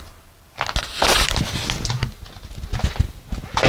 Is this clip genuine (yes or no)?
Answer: yes